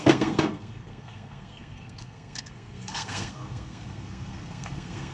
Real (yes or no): no